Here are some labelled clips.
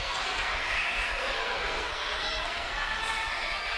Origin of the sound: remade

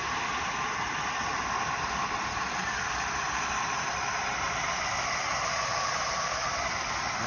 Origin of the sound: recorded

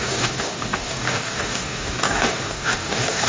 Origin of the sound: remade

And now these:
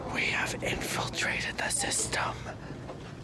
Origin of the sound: recorded